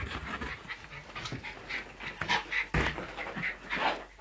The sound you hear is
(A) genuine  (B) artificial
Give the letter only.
A